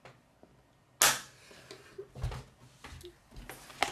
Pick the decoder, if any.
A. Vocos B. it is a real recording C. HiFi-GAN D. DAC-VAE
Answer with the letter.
B